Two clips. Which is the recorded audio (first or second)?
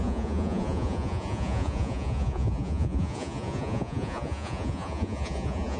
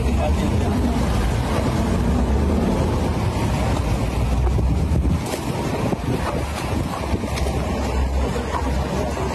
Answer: second